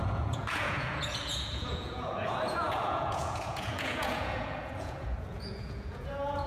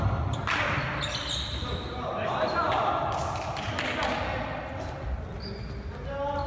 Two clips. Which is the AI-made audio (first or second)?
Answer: first